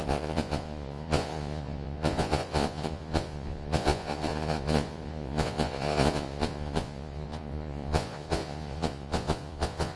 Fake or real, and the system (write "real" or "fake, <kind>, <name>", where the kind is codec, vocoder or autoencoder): fake, vocoder, Vocos